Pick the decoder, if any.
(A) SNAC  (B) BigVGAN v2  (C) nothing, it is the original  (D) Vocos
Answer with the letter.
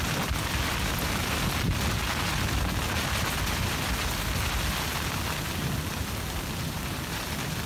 C